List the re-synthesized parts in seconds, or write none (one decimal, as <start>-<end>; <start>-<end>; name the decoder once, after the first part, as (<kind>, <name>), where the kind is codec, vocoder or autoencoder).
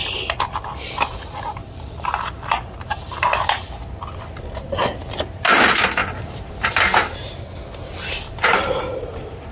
1.6-3.8 (vocoder, BigVGAN v2); 6.0-6.8